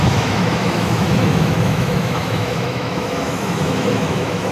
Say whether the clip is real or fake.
fake